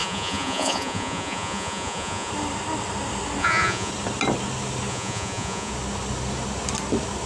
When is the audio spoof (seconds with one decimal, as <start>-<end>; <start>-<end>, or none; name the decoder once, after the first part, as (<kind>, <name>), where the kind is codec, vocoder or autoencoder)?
0.0-2.3 (vocoder, Vocos); 3.4-3.9; 4.9-5.7